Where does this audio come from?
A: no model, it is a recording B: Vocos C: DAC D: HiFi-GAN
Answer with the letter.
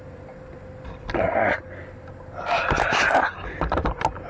A